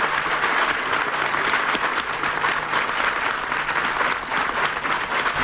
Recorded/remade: recorded